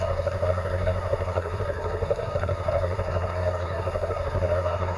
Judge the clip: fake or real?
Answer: fake